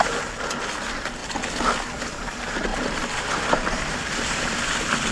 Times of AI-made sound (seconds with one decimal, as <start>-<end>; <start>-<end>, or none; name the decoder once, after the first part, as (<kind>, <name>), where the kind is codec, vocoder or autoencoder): 2.7-4.1 (vocoder, BigVGAN v2)